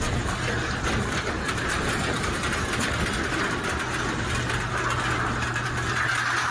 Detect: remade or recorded recorded